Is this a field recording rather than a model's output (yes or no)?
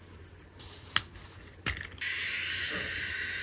yes